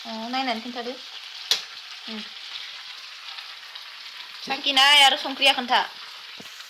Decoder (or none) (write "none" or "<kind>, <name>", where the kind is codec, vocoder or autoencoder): none